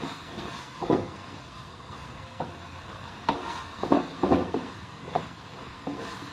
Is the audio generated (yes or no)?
yes